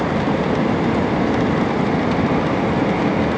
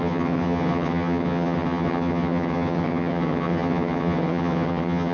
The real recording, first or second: first